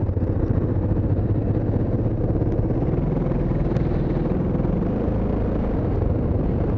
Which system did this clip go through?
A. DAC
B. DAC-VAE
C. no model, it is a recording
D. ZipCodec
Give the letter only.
C